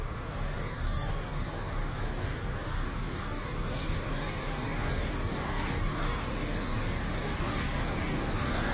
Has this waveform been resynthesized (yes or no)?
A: yes